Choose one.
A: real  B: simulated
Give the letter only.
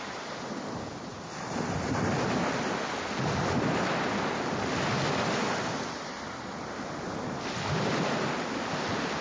A